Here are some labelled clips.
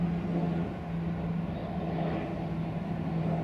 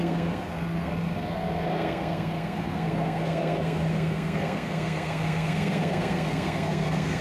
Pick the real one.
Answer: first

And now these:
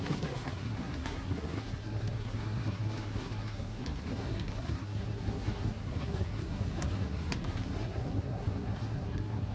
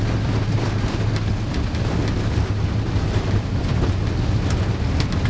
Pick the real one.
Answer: second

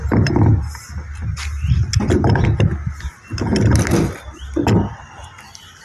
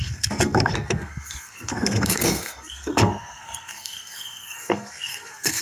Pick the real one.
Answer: first